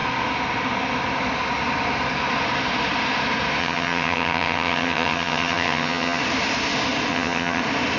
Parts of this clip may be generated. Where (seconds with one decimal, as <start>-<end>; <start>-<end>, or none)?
3.6-6.2; 7.1-7.6